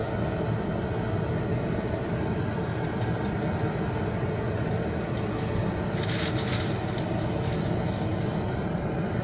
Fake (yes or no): no